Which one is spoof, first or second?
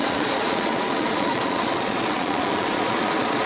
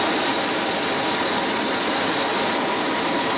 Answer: first